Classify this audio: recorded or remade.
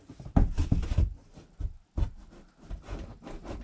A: recorded